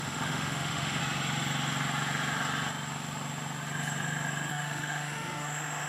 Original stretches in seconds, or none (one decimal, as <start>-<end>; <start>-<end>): 1.0-4.5